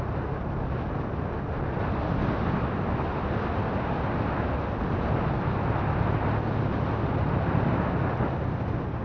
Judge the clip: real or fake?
real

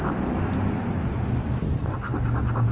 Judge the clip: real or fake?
real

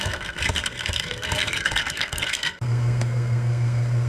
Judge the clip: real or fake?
fake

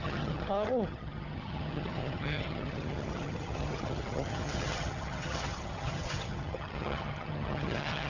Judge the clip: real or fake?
fake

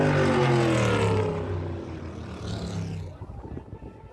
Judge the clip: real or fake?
real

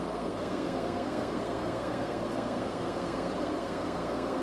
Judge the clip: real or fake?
fake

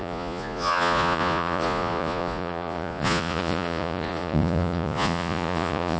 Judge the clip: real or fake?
fake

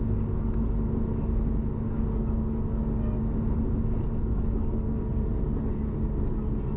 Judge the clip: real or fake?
real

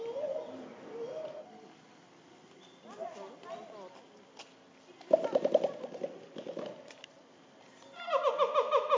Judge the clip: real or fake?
real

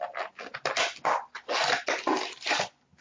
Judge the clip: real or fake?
real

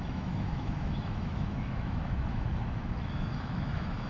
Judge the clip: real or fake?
fake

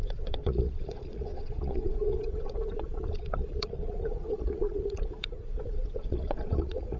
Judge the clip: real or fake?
fake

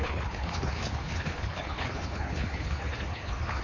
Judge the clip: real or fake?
fake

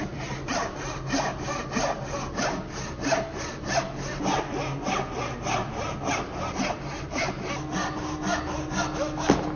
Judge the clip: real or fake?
real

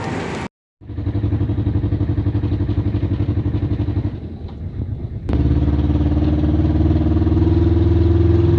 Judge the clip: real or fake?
real